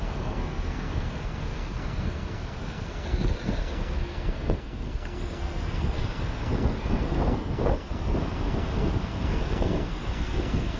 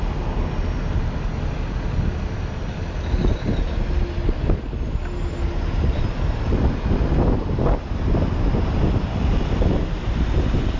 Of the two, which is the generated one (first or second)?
first